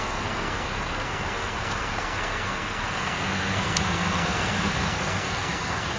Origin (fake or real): fake